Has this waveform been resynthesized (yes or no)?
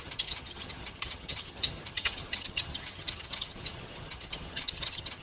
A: yes